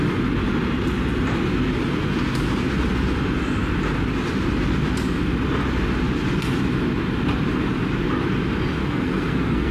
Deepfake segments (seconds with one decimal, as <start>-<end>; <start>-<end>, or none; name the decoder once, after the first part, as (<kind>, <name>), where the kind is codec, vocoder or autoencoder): 8.8-9.7 (codec, SNAC)